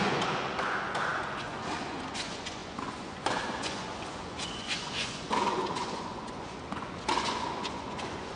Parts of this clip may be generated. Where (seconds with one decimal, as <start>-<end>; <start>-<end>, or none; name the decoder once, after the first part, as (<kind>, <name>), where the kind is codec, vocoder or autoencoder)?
0.0-8.4 (vocoder, Vocos)